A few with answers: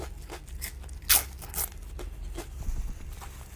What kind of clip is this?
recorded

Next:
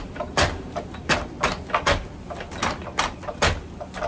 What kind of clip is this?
recorded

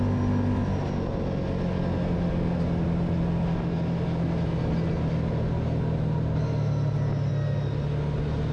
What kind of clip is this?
recorded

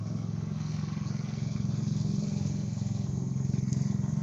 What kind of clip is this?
remade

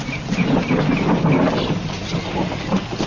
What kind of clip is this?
recorded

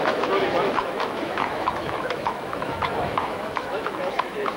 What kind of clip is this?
remade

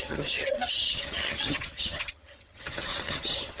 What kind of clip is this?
remade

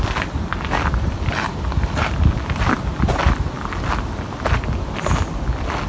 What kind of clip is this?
recorded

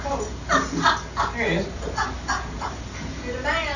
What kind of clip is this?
recorded